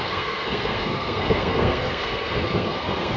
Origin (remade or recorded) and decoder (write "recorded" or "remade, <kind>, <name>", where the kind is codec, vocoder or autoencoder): remade, codec, SNAC